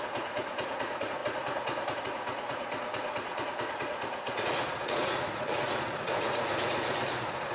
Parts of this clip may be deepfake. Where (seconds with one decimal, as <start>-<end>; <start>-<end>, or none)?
0.0-7.5